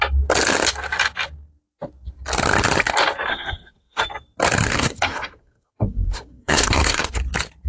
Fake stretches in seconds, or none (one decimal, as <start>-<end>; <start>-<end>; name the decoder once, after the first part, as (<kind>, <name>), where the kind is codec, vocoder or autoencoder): 3.3-4.0 (codec, SNAC); 4.7-7.2